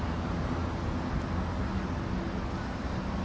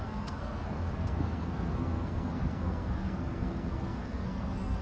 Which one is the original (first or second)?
first